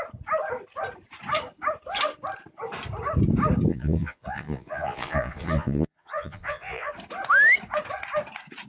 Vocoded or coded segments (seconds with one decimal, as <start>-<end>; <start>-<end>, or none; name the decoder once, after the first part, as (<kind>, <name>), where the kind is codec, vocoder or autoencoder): 3.7-6.9 (vocoder, Vocos)